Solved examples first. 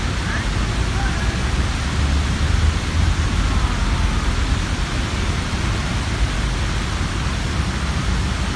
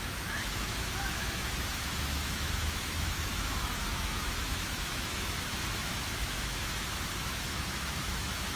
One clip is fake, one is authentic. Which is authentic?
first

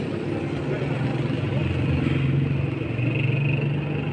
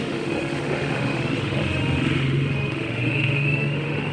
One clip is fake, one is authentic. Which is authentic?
first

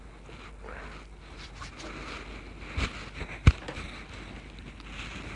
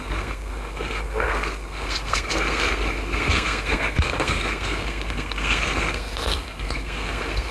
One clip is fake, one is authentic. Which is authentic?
first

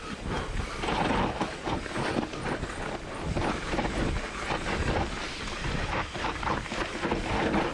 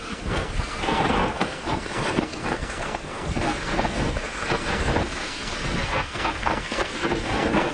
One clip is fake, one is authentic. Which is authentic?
first